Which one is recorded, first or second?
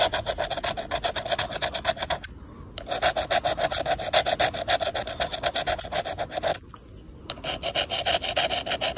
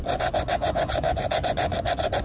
first